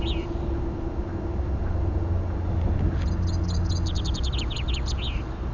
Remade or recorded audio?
recorded